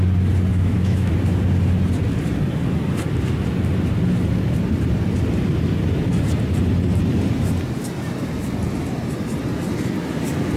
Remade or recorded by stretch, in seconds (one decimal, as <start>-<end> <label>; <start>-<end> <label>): 0.0-0.5 recorded; 0.5-1.1 remade; 1.1-10.6 recorded